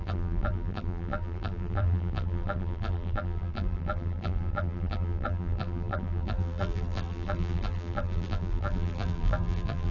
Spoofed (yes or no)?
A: yes